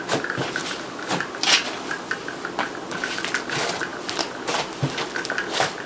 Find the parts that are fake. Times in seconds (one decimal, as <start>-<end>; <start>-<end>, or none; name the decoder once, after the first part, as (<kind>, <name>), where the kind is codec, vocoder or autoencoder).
0.6-1.5 (vocoder, BigVGAN v2); 3.9-4.6